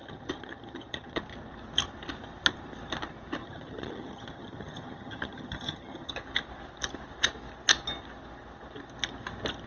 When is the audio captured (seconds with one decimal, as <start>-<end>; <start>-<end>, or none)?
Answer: 1.2-3.4; 6.1-9.7